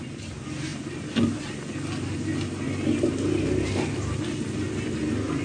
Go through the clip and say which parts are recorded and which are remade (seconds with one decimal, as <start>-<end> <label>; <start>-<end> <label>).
0.0-5.4 recorded